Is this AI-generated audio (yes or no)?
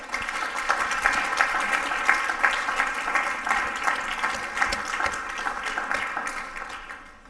no